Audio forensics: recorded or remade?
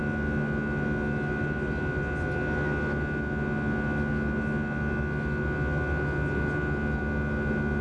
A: recorded